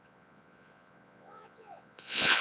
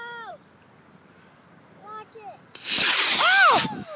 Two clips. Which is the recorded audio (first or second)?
second